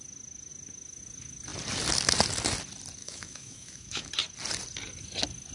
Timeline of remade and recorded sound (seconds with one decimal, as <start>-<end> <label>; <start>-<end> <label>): 0.0-3.0 recorded; 3.0-4.1 remade; 4.1-5.5 recorded